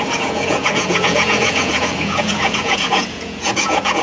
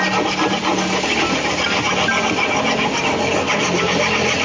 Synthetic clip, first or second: first